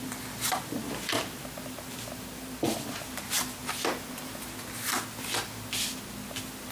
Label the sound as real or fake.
real